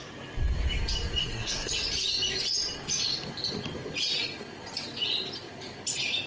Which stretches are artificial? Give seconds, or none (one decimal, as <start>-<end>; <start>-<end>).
1.2-1.7